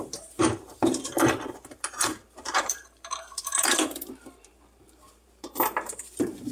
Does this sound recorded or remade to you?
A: remade